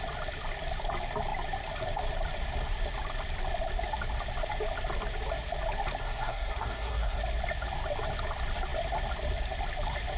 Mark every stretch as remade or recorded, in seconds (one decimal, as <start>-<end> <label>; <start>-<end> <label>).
0.0-6.0 recorded; 6.0-7.2 remade; 7.2-10.2 recorded